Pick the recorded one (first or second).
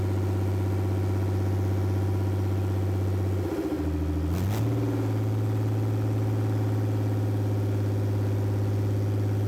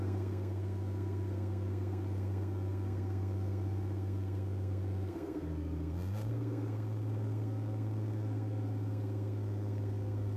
first